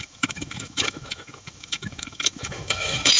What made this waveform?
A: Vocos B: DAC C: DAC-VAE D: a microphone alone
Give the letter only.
C